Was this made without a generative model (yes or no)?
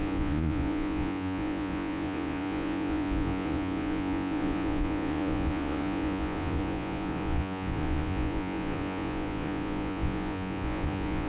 no